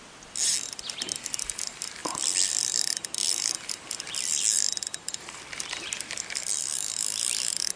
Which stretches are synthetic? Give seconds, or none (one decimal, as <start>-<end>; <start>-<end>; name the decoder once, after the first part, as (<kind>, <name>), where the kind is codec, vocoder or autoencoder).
none